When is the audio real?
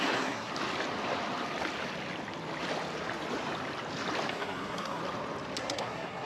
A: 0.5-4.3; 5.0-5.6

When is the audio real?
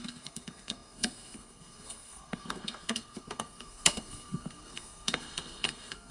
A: none